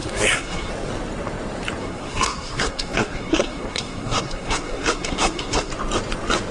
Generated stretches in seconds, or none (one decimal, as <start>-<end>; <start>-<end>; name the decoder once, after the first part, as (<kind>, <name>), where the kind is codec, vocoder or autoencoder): 0.0-0.7 (codec, SNAC); 1.8-5.7